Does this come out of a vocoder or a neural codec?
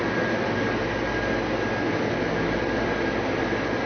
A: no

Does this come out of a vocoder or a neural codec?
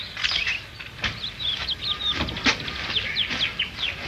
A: no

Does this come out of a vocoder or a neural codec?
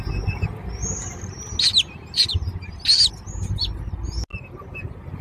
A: no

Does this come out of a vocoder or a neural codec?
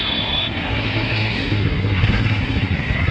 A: yes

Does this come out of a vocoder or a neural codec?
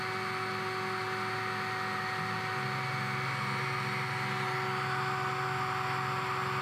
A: no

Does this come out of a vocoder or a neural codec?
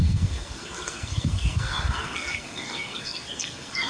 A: yes